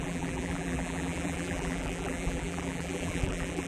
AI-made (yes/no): yes